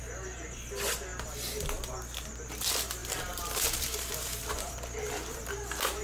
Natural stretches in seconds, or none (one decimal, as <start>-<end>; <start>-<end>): 0.0-3.0; 5.5-6.0